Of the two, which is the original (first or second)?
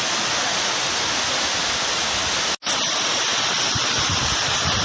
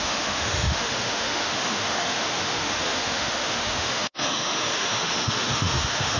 first